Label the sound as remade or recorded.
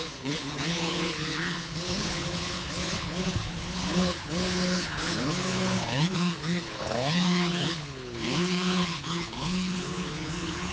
remade